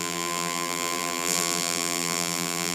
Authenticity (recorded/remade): remade